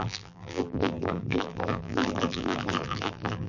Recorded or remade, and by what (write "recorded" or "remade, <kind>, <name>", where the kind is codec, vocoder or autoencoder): remade, vocoder, BigVGAN v2